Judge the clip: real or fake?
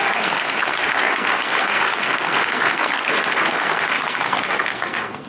fake